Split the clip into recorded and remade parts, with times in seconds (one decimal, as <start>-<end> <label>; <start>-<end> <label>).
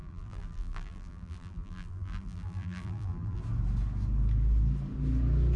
0.0-3.4 remade; 3.4-5.6 recorded